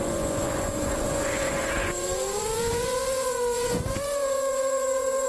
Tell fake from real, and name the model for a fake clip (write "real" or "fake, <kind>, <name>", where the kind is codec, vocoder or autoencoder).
fake, vocoder, Vocos